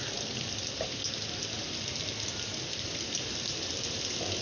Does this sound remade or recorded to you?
recorded